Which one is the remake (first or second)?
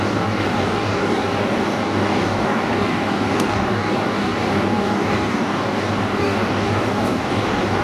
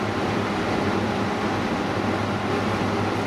first